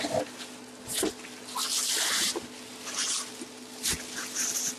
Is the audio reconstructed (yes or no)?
no